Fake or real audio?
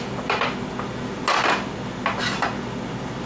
real